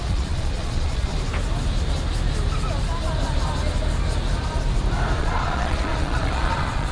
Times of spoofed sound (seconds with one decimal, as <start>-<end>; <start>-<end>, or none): 0.0-1.1; 5.2-6.9